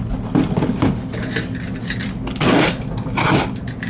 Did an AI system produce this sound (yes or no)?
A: no